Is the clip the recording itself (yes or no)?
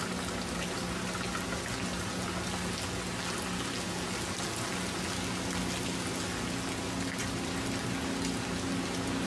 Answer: yes